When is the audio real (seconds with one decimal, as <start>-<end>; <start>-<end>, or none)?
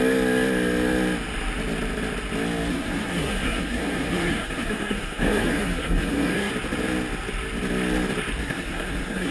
0.0-2.7; 6.5-8.4